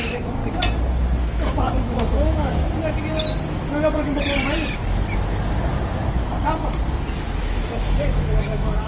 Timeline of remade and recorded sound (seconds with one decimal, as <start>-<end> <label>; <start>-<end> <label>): 0.0-0.4 remade; 0.4-1.2 recorded; 1.2-2.5 remade; 2.5-7.4 recorded; 7.4-8.9 remade